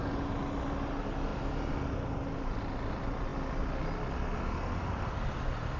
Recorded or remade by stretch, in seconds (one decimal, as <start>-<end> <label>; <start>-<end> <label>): 0.0-5.8 recorded